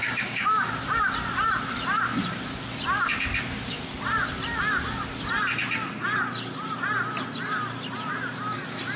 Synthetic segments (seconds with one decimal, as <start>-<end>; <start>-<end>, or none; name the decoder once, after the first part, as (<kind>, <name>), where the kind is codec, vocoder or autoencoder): 0.0-0.7 (codec, DAC)